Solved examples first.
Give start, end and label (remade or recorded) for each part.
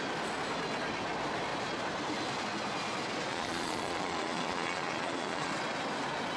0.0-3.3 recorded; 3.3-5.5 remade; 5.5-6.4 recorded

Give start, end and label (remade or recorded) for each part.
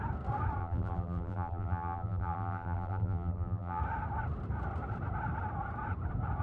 0.0-0.6 recorded; 0.6-3.8 remade; 3.8-6.4 recorded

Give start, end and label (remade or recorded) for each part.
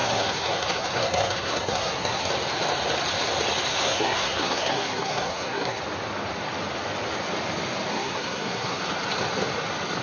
0.0-2.3 remade; 2.3-3.7 recorded; 3.7-5.8 remade; 5.8-7.9 recorded; 7.9-8.8 remade; 8.8-10.0 recorded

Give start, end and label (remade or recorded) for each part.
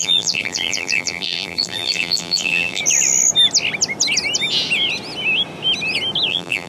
0.0-2.8 remade; 2.8-6.3 recorded; 6.3-6.7 remade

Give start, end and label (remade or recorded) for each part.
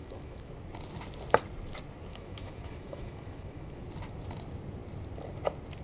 0.0-0.5 remade; 0.5-2.1 recorded; 2.1-3.8 remade; 3.8-5.8 recorded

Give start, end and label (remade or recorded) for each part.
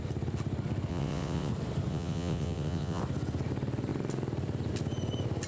0.0-0.9 recorded; 0.9-1.5 remade; 1.5-1.9 recorded; 1.9-3.0 remade; 3.0-5.5 recorded